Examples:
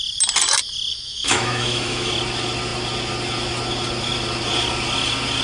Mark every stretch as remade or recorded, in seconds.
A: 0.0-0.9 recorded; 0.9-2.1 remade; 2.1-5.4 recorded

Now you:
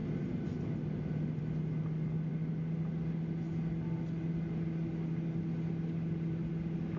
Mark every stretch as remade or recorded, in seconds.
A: 0.0-7.0 recorded